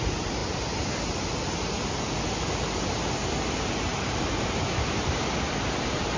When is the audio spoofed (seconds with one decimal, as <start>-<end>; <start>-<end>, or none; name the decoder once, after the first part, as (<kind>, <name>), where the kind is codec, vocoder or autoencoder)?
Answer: 0.0-0.4 (vocoder, BigVGAN v2); 4.0-6.2